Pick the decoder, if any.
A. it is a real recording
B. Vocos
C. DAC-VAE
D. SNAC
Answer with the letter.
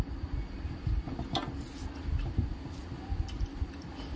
A